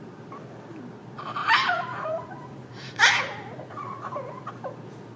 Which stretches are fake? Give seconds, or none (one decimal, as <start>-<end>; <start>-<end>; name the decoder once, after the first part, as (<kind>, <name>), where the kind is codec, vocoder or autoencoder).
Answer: 1.4-4.5 (vocoder, Vocos)